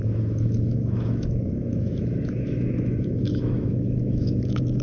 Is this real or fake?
fake